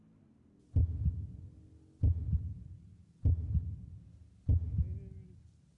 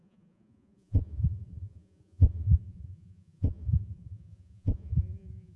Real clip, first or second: first